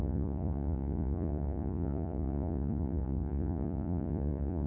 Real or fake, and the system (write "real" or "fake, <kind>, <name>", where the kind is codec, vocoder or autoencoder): fake, vocoder, Vocos